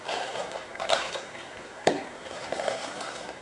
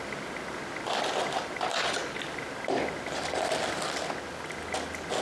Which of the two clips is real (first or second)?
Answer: second